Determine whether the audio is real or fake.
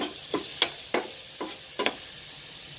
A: real